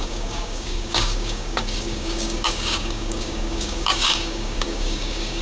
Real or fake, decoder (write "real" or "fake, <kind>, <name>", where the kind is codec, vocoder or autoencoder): fake, codec, DAC